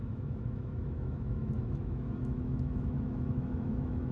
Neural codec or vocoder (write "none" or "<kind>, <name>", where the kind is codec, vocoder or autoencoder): autoencoder, DAC-VAE